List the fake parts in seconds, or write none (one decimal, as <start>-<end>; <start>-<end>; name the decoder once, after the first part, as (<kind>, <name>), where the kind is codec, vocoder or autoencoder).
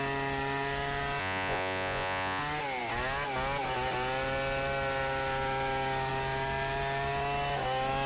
1.2-2.4 (vocoder, Vocos)